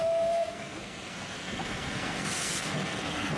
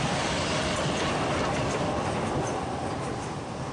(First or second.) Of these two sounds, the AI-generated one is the first